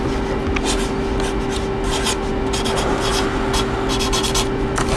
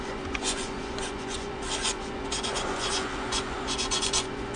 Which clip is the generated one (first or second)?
second